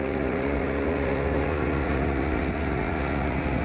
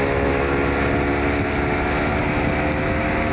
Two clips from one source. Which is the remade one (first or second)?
first